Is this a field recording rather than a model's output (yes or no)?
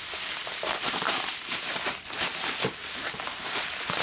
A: no